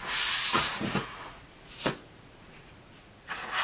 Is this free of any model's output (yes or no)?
no